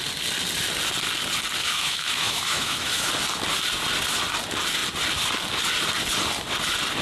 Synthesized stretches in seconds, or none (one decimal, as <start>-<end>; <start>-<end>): 1.6-3.1